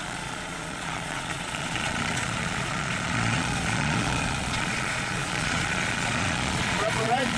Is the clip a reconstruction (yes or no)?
yes